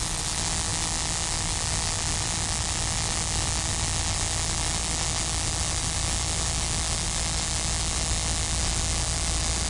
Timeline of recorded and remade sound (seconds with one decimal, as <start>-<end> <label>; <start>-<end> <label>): 0.0-9.7 recorded